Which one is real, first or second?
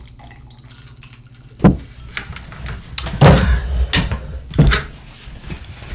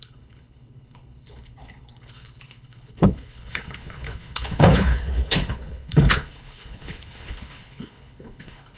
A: first